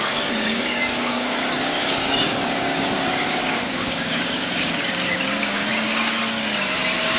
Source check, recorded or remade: remade